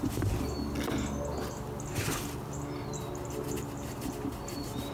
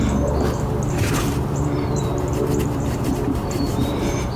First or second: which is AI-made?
second